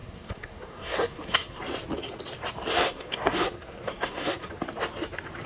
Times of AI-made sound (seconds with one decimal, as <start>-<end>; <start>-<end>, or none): 0.0-1.6; 2.8-4.5

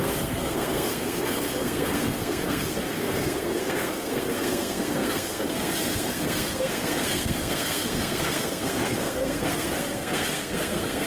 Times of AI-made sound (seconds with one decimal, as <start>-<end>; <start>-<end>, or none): 0.0-11.1